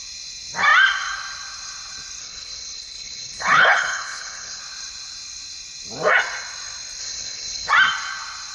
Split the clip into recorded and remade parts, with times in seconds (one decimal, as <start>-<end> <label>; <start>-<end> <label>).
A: 0.0-2.2 recorded; 2.2-4.6 remade; 4.6-7.0 recorded; 7.0-7.7 remade; 7.7-8.5 recorded